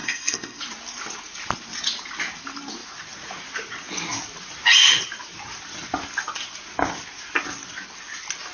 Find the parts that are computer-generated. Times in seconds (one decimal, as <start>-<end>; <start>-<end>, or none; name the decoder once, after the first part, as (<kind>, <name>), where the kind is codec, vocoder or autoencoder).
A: 0.0-0.6 (codec, SNAC)